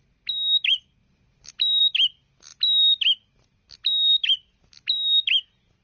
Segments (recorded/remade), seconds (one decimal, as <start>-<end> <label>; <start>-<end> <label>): 0.0-5.8 recorded